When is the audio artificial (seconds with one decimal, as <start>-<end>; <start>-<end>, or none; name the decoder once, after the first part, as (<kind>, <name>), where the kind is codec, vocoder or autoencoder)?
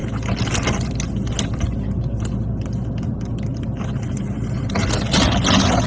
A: none